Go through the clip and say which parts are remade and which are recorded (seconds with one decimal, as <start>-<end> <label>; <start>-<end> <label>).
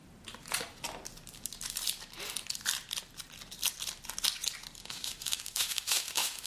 0.0-4.8 recorded; 4.8-6.5 remade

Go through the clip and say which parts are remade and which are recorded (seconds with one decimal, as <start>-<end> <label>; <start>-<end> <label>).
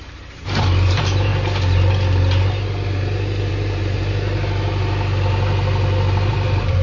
0.0-1.3 remade; 1.3-3.5 recorded; 3.5-4.0 remade; 4.0-6.3 recorded; 6.3-6.8 remade